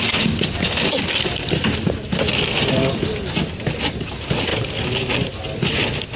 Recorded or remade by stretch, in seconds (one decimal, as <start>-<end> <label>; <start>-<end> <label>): 0.0-6.2 recorded